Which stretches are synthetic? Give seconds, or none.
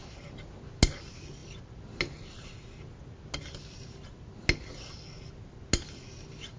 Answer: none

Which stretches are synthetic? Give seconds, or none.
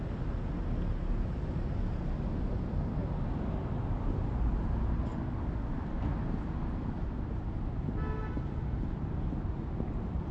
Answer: none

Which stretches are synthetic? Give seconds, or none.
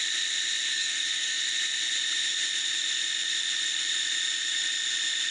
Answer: 0.7-1.4 (codec, SNAC)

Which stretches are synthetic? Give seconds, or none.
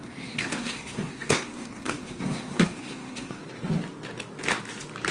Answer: 0.0-3.4 (codec, SNAC)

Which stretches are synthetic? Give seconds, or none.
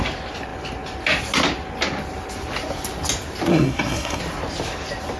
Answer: 3.5-4.2 (codec, SNAC)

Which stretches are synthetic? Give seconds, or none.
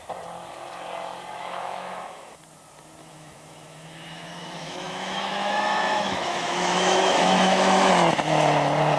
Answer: 1.4-2.4 (autoencoder, DAC-VAE); 3.0-7.9